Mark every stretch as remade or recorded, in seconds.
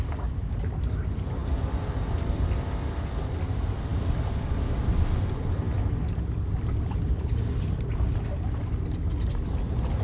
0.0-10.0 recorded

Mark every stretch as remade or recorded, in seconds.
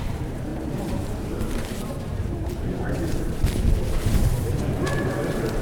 0.0-5.6 remade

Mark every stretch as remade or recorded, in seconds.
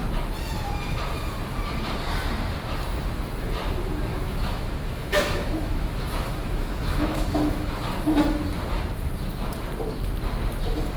0.0-4.1 recorded; 4.1-7.7 remade; 7.7-11.0 recorded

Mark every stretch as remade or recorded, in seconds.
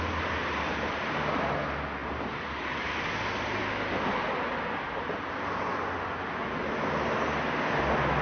0.0-8.2 recorded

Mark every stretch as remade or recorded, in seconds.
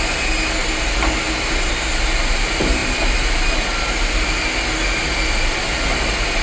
0.0-6.4 recorded